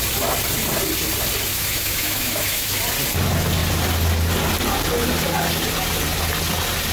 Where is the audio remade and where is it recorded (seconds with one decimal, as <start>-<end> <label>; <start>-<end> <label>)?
0.0-1.5 recorded; 1.5-2.8 remade; 2.8-6.9 recorded